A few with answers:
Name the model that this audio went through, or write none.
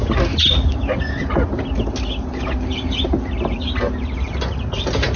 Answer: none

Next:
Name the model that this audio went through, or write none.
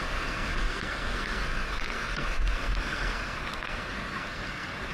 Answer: codec, SNAC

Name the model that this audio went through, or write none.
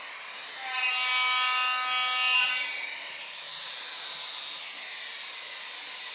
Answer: none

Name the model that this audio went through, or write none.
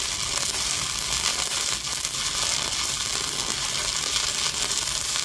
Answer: none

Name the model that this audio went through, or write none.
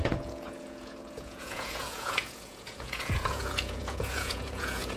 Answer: vocoder, Vocos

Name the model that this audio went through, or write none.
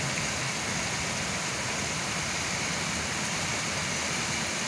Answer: none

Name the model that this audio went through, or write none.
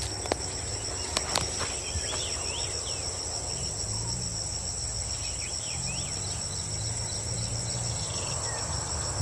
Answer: none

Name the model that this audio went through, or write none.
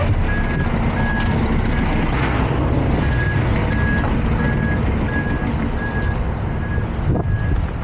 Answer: none